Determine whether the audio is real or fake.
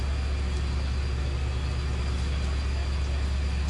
real